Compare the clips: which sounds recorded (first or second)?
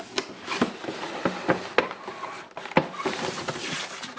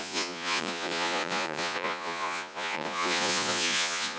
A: first